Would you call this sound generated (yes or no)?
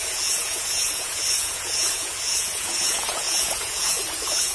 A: yes